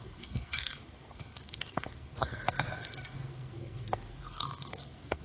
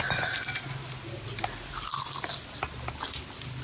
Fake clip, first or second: first